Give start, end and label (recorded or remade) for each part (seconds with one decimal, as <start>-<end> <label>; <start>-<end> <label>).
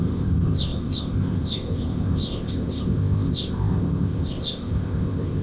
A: 0.0-5.4 remade